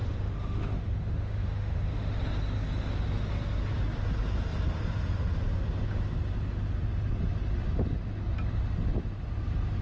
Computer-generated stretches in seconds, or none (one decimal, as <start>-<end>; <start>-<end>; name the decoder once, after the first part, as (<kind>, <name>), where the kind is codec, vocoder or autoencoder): 0.0-2.2 (autoencoder, DAC-VAE)